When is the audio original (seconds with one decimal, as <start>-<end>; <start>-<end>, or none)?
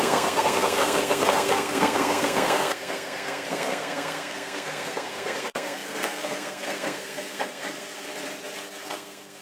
8.1-8.7